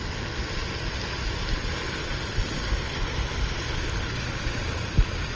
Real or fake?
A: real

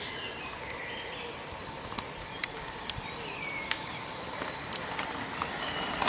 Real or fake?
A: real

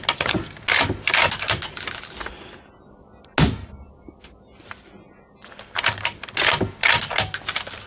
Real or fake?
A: real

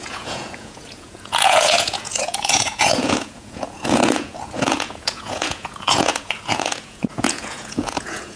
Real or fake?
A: fake